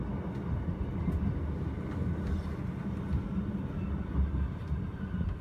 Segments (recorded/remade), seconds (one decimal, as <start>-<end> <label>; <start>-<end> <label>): 0.0-4.6 recorded; 4.6-5.4 remade